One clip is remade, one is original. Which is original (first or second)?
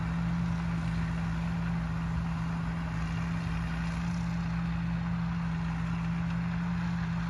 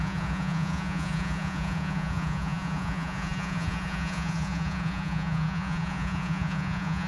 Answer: first